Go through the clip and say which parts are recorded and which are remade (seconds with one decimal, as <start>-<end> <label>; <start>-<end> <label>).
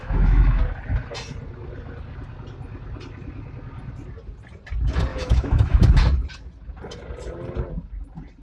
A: 0.0-0.6 remade; 0.6-5.1 recorded; 5.1-6.0 remade; 6.0-8.4 recorded